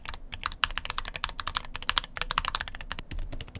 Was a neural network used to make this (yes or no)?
no